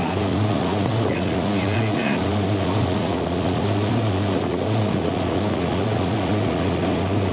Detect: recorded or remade remade